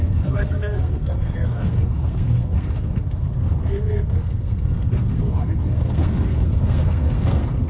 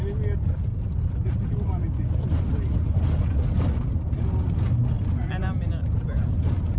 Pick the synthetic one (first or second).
first